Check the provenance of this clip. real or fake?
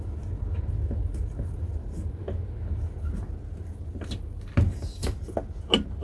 real